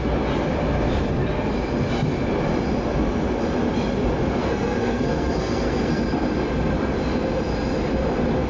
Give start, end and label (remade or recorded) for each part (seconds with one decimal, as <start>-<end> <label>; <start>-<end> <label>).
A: 0.0-4.4 recorded; 4.4-6.0 remade; 6.0-8.5 recorded